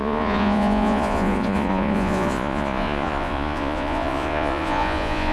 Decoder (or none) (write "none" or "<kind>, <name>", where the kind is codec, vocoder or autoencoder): vocoder, Vocos